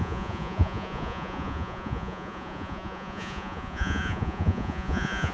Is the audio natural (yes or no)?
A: no